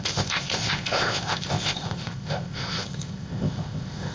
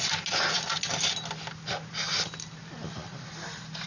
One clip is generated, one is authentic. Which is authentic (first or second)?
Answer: second